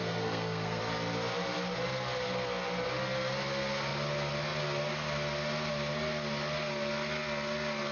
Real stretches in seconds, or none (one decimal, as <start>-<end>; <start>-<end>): 0.8-7.9